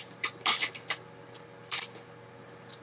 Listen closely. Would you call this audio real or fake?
real